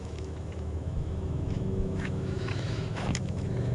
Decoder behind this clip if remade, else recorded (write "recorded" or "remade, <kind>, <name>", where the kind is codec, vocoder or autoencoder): remade, autoencoder, DAC-VAE